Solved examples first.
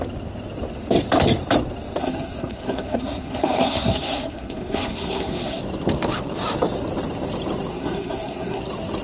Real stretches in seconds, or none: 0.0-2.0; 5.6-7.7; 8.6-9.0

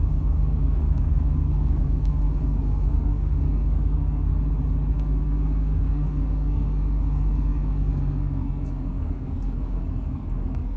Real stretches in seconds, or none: 4.3-4.9

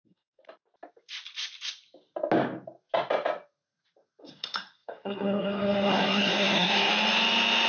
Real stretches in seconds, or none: 0.4-4.2; 6.9-7.7

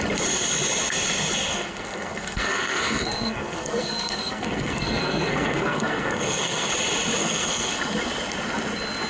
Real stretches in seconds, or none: 0.0-1.5; 6.7-7.2; 7.7-9.1

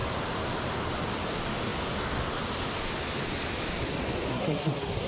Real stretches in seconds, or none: 0.0-4.3

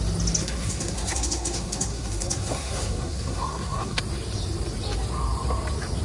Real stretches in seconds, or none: 0.0-0.4; 4.0-6.0

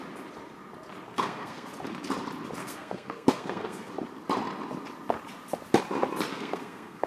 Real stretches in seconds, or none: 0.0-1.1; 1.7-2.6; 3.9-6.3

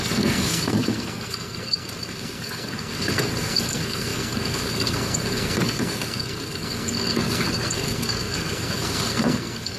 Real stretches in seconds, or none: none